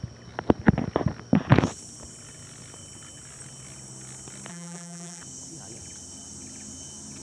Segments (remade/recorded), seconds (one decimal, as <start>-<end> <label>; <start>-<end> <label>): 0.0-4.5 recorded; 4.5-5.2 remade; 5.2-7.2 recorded